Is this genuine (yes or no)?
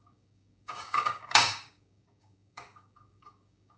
no